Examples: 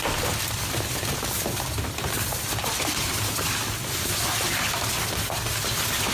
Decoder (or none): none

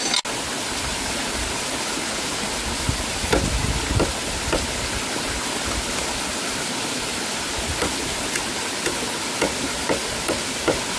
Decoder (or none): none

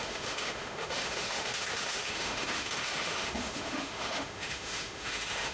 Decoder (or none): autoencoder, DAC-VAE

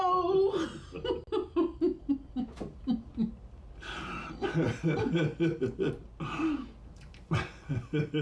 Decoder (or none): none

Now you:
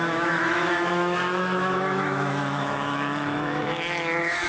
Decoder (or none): autoencoder, DAC-VAE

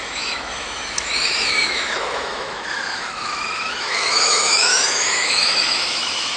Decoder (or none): autoencoder, DAC-VAE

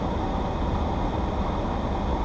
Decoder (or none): none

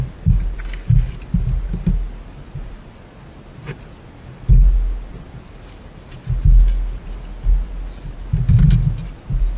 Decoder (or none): none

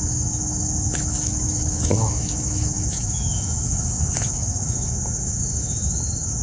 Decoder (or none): autoencoder, DAC-VAE